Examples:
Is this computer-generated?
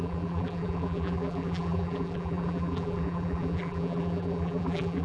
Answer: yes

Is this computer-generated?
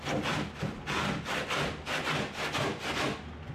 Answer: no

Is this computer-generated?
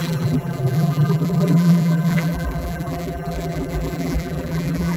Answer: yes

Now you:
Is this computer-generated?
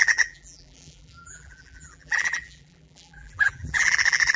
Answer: yes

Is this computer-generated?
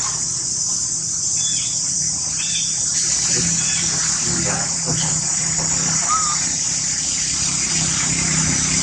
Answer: yes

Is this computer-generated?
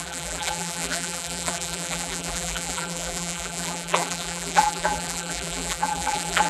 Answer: yes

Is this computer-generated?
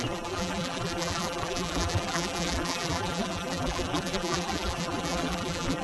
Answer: yes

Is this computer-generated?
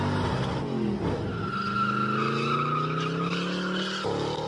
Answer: no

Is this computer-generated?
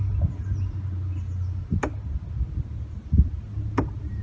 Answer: no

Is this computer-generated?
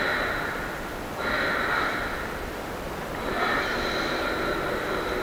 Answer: no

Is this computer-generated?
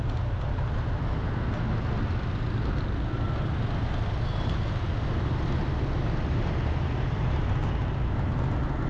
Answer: no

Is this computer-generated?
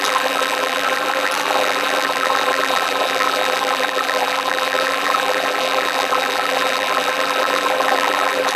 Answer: yes